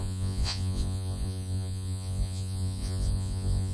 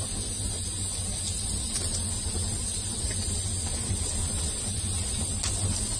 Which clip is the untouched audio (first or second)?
second